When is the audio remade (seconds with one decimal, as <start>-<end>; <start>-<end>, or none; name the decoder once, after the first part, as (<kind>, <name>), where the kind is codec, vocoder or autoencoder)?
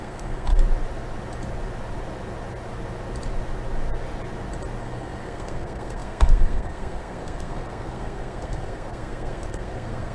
0.0-0.5 (codec, SNAC); 4.8-10.1